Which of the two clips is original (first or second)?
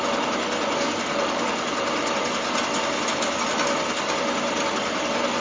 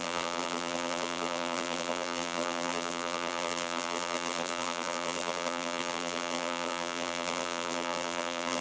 first